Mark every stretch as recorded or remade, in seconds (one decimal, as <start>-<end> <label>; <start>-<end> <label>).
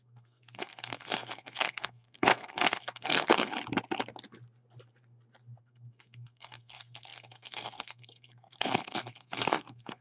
0.0-3.5 remade; 3.5-5.6 recorded; 5.6-10.0 remade